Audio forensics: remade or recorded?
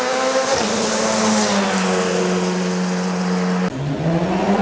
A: recorded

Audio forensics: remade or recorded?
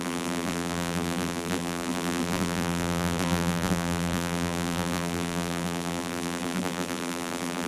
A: remade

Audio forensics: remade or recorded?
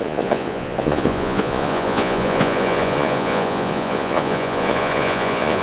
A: remade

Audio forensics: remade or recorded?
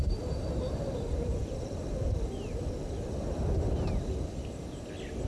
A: recorded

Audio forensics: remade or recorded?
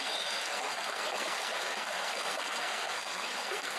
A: remade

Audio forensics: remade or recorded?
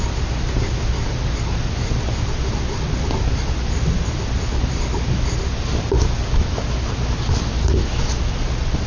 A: recorded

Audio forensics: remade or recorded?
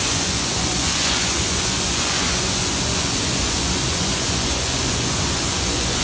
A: remade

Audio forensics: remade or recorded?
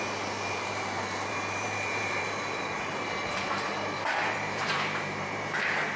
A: remade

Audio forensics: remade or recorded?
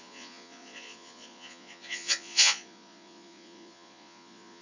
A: remade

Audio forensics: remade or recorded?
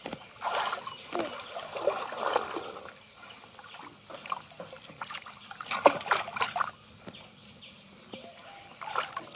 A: recorded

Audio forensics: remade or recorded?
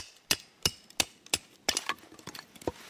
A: recorded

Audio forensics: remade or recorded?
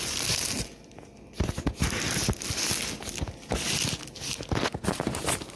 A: recorded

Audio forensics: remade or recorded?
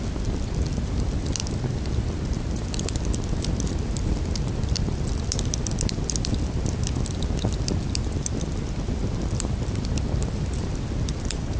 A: recorded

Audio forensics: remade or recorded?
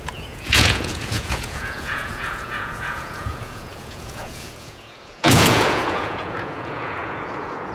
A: remade